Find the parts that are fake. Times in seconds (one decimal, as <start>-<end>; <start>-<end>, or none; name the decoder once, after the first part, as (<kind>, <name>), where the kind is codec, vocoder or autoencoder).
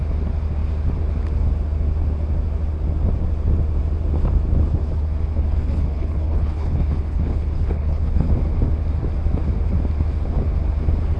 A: 5.4-8.3 (codec, HILCodec)